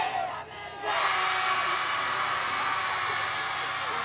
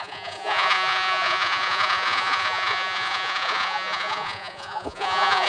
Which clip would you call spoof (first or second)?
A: second